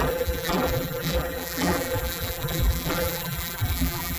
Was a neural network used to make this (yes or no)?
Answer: yes